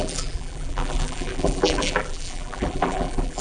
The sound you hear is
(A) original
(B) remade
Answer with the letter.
B